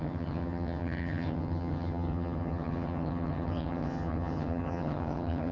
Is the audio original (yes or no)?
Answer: no